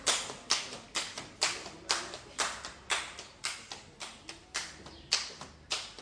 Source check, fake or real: real